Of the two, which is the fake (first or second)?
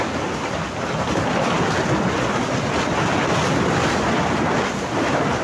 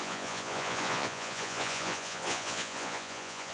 second